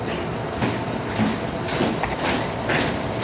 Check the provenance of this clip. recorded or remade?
recorded